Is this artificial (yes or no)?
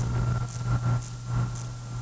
no